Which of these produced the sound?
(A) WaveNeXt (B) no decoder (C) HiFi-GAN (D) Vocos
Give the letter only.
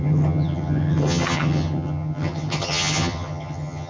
C